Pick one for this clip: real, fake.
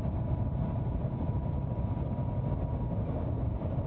real